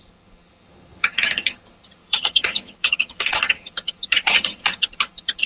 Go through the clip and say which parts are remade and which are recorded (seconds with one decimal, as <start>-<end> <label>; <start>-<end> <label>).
0.0-5.5 remade